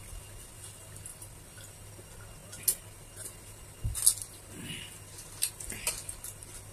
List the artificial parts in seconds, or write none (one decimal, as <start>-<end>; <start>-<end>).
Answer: 1.1-1.7

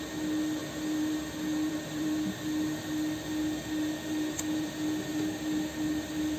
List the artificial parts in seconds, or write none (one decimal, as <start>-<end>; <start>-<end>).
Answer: 0.0-6.4

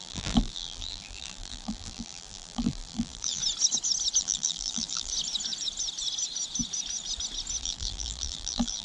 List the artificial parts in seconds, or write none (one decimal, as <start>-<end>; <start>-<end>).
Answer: 0.0-3.4; 4.2-5.1; 7.6-8.8

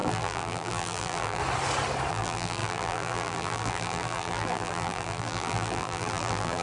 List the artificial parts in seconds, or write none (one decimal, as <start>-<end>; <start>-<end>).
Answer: 0.0-1.4; 2.1-6.6

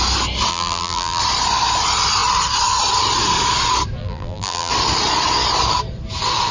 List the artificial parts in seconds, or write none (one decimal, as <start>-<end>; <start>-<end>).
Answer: 0.5-1.2; 4.0-4.7